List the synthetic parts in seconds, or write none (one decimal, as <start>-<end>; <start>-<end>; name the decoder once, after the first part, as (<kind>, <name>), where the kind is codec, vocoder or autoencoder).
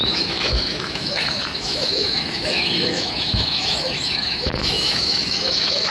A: 0.0-5.9 (autoencoder, DAC-VAE)